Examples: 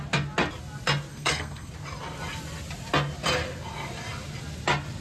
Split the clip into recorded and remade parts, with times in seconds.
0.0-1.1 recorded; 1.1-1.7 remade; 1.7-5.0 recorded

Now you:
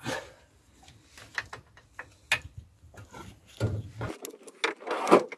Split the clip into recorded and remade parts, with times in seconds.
0.0-5.4 recorded

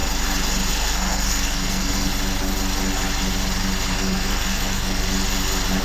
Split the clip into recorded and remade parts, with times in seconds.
0.0-0.7 recorded; 0.7-2.1 remade; 2.1-3.9 recorded; 3.9-5.0 remade; 5.0-5.8 recorded

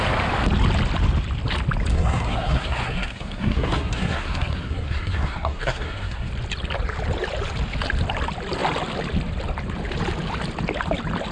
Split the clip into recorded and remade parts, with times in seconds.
0.0-1.9 recorded; 1.9-6.3 remade; 6.3-11.3 recorded

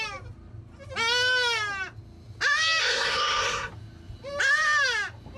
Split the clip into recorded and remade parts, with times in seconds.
0.0-2.8 recorded; 2.8-3.7 remade; 3.7-5.4 recorded

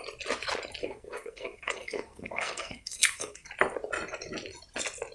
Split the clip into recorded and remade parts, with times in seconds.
0.0-0.8 recorded; 0.8-3.5 remade; 3.5-5.1 recorded

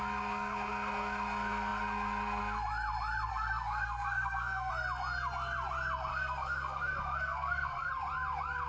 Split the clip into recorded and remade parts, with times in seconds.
0.0-3.3 recorded; 3.3-4.7 remade; 4.7-6.1 recorded; 6.1-7.9 remade; 7.9-8.7 recorded

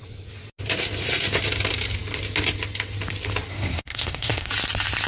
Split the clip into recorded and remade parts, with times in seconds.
0.0-3.5 recorded; 3.5-4.5 remade; 4.5-5.1 recorded